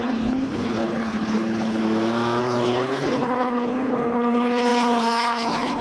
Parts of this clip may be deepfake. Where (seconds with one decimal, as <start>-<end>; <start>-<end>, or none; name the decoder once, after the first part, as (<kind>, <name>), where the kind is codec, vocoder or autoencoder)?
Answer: 0.0-1.8 (codec, HILCodec); 2.4-5.8